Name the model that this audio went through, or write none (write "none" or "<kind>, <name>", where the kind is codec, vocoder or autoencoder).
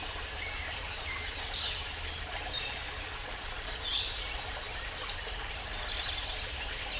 none